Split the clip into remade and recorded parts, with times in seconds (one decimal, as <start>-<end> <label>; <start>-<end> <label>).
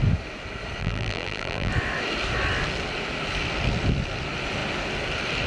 0.0-0.8 recorded; 0.8-1.7 remade; 1.7-5.5 recorded